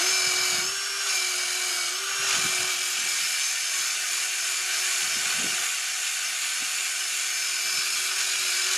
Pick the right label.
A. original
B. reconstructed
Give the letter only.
A